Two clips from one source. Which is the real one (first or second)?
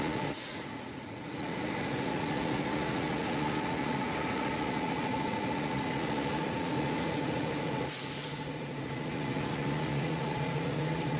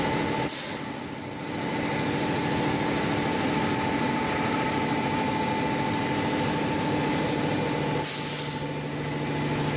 second